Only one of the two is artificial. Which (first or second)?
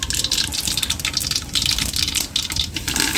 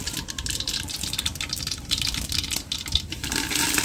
second